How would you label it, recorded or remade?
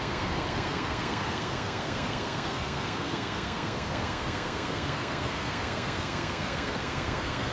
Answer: remade